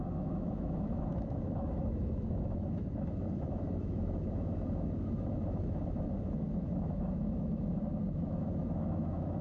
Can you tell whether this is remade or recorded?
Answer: remade